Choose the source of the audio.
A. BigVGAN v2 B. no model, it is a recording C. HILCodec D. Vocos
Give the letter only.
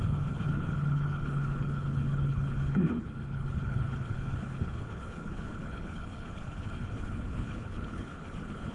C